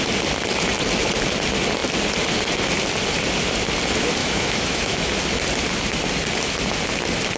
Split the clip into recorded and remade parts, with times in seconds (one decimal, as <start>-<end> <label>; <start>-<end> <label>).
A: 0.0-4.2 recorded; 4.2-5.2 remade; 5.2-7.4 recorded